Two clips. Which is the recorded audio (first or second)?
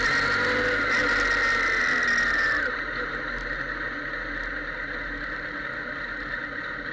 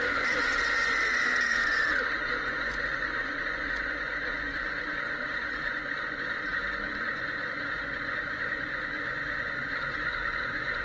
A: first